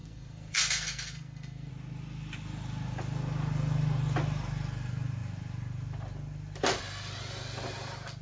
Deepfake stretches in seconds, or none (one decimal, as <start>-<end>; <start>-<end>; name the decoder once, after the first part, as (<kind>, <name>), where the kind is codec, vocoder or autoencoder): 0.0-1.7 (codec, SNAC)